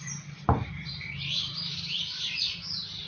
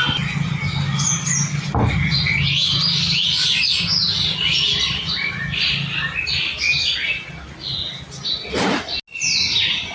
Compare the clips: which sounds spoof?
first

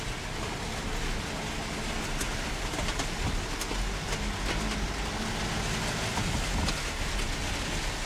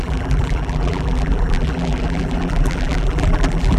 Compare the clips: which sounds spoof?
second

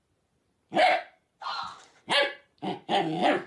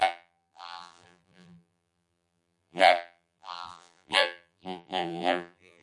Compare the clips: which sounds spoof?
second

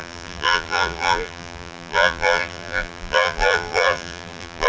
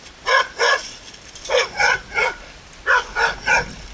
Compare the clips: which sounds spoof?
first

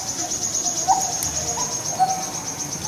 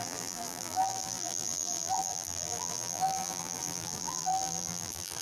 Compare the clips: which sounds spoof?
second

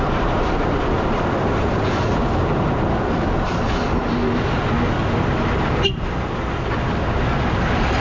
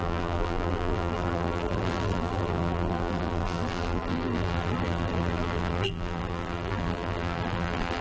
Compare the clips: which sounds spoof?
second